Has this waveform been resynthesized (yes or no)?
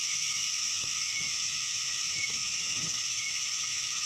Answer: yes